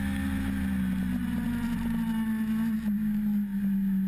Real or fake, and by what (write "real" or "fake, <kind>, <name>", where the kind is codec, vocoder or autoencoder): real